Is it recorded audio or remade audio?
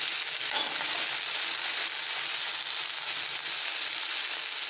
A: recorded